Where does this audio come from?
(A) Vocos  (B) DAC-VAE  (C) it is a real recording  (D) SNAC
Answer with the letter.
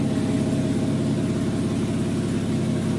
C